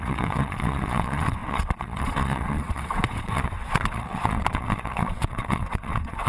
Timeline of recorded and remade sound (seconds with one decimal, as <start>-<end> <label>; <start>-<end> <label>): 0.0-6.3 remade